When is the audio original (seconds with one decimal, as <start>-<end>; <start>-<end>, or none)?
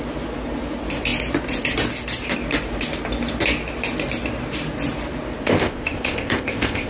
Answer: 0.0-5.4